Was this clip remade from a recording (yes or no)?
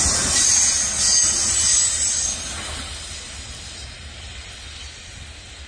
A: no